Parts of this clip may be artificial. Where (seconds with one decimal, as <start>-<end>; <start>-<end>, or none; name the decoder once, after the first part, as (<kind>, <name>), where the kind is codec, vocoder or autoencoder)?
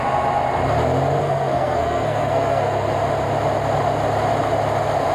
1.2-2.9 (codec, SNAC)